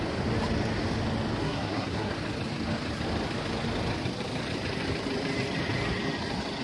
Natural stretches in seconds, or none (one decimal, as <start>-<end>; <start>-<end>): 0.0-1.4; 2.1-6.6